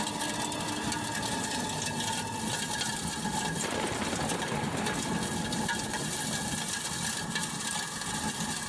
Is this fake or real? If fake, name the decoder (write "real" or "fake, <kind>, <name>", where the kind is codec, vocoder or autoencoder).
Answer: real